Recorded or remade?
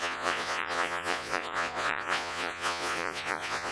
remade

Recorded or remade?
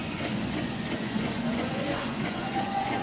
remade